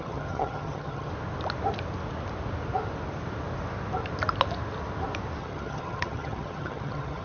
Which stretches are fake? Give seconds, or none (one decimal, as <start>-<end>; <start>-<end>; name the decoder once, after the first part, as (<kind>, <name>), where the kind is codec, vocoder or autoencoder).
0.0-1.1 (vocoder, HiFi-GAN); 5.4-7.2